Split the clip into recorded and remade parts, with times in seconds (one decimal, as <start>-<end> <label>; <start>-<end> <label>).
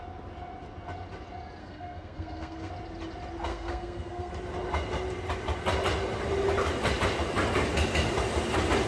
0.0-1.6 recorded; 1.6-2.7 remade; 2.7-3.5 recorded; 3.5-4.3 remade; 4.3-8.9 recorded